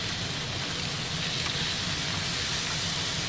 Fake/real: real